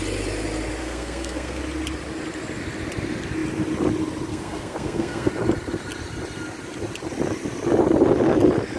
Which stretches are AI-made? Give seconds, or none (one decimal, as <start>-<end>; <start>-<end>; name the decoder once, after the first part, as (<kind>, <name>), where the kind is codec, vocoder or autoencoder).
0.8-1.6 (codec, SNAC); 4.3-5.3